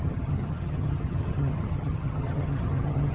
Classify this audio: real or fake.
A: fake